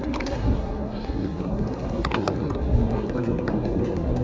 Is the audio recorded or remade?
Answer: remade